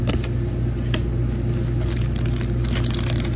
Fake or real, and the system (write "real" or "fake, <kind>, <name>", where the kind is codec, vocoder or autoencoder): real